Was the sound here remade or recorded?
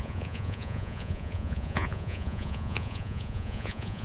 remade